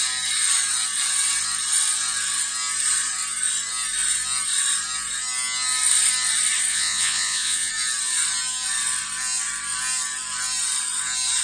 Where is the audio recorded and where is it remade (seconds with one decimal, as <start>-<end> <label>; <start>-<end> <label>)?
0.0-6.7 recorded; 6.7-7.7 remade; 7.7-11.4 recorded

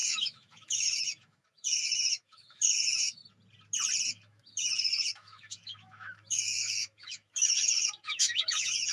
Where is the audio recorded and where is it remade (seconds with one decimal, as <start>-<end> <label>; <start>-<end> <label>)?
0.0-3.2 remade; 3.2-4.1 recorded; 4.1-8.9 remade

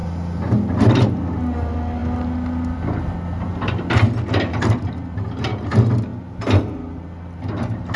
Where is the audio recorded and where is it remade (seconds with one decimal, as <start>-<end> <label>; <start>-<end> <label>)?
0.0-8.0 recorded

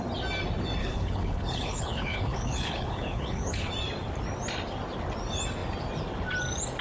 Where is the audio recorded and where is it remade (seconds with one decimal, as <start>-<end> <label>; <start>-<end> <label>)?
0.0-0.8 recorded; 0.8-3.7 remade; 3.7-6.8 recorded

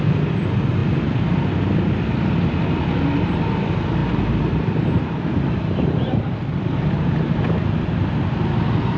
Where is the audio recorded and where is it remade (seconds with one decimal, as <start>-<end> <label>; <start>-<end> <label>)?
0.0-4.0 recorded; 4.0-7.4 remade; 7.4-9.0 recorded

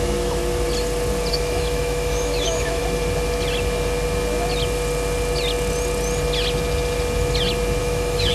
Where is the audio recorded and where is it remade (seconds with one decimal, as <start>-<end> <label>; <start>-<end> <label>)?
0.0-0.4 remade; 0.4-1.3 recorded; 1.3-2.8 remade; 2.8-7.8 recorded; 7.8-8.3 remade

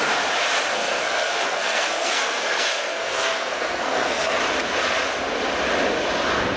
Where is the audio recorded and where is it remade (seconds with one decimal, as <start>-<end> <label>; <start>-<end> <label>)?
0.0-0.7 recorded; 0.7-4.4 remade; 4.4-6.6 recorded

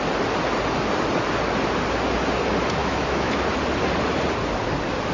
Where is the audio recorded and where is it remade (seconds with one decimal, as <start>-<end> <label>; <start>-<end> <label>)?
0.0-2.8 recorded; 2.8-3.4 remade; 3.4-5.1 recorded